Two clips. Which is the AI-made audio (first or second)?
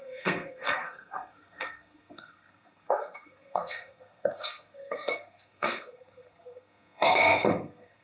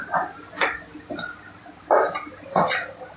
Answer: first